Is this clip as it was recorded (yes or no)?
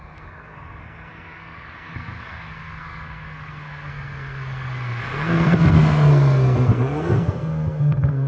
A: no